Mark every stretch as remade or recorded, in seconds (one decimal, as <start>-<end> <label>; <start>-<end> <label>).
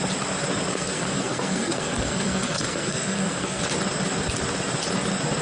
0.0-0.7 recorded; 0.7-3.6 remade; 3.6-5.4 recorded